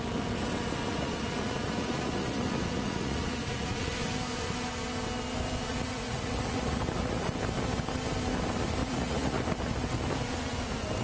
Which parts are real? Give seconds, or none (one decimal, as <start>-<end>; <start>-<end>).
0.0-0.9; 3.9-5.7; 7.3-8.8; 9.4-11.0